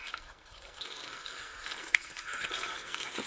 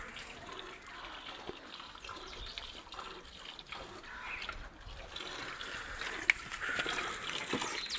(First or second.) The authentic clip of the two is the second